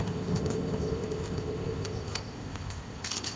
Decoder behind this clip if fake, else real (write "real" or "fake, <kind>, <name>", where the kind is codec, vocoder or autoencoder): fake, codec, ZipCodec